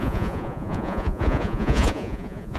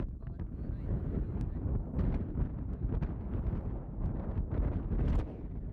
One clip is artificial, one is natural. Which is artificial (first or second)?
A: first